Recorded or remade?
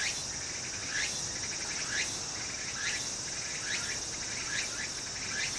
recorded